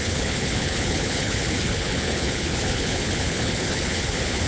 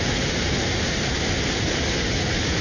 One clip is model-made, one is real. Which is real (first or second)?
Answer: second